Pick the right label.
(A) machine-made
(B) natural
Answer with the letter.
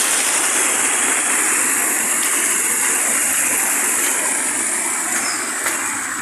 B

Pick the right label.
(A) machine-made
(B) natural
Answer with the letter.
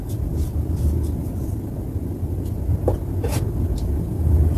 B